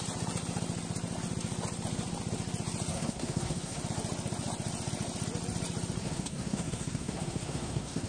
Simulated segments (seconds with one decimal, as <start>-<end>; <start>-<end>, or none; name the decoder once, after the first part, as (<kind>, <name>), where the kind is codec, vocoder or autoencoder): 2.9-3.8 (codec, SNAC); 6.0-8.1